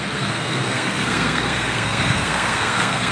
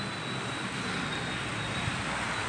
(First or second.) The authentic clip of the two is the second